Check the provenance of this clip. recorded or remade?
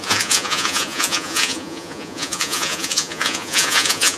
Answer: remade